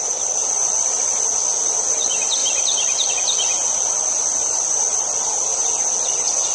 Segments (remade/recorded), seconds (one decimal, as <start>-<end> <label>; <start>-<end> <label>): 0.0-6.5 recorded